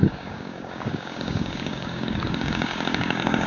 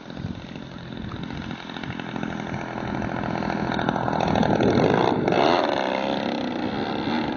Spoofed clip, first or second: first